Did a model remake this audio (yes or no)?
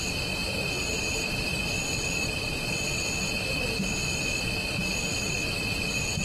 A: yes